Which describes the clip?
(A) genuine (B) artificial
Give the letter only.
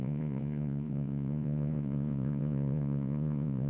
B